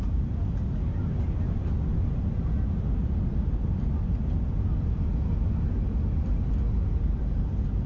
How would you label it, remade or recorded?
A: recorded